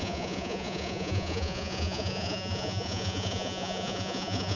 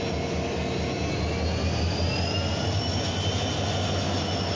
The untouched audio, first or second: second